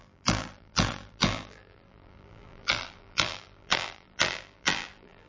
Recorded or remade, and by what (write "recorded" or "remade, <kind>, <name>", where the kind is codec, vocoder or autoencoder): remade, vocoder, BigVGAN v2